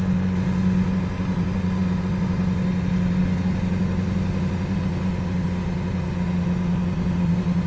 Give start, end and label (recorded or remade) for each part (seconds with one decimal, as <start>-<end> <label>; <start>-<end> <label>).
0.0-7.7 recorded